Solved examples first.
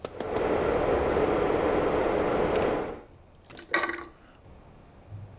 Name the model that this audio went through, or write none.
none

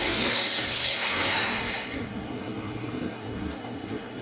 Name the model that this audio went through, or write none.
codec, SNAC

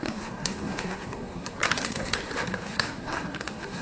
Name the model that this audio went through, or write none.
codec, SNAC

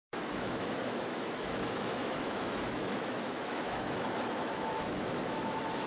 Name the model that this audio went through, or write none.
autoencoder, DAC-VAE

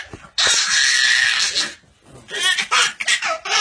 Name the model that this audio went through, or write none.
none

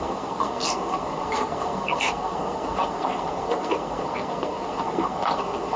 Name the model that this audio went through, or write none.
codec, SNAC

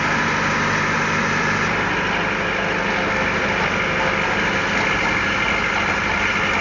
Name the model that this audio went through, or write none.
none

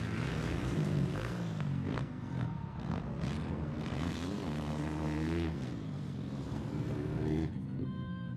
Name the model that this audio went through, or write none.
codec, SNAC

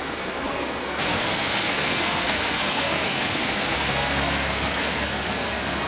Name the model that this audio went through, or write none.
codec, SNAC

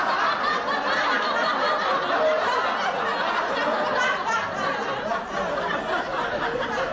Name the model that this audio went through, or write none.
none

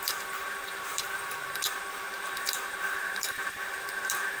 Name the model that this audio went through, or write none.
vocoder, BigVGAN v2